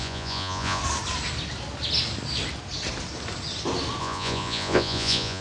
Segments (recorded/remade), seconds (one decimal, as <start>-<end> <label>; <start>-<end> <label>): 0.0-0.8 remade; 0.8-4.0 recorded; 4.0-5.4 remade